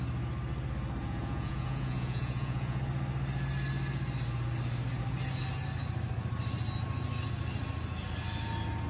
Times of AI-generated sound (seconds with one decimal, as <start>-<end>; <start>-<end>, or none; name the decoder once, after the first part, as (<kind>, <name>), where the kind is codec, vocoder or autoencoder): 1.0-2.8 (vocoder, Vocos)